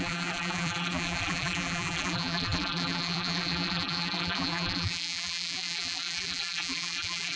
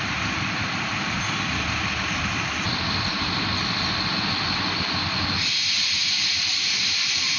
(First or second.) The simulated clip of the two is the first